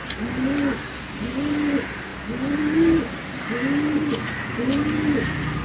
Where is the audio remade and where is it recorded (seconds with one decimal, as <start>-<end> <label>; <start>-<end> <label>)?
0.0-5.6 recorded